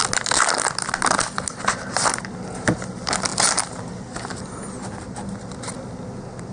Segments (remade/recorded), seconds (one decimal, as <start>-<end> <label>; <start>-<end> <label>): 0.0-6.5 recorded